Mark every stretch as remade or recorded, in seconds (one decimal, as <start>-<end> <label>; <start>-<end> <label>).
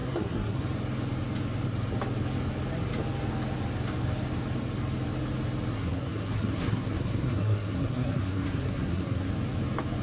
0.0-0.6 remade; 0.6-5.7 recorded; 5.7-9.3 remade; 9.3-10.0 recorded